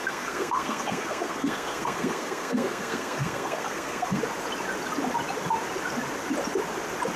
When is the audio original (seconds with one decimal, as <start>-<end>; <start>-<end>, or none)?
4.2-7.2